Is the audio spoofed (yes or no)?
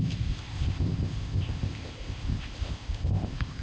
yes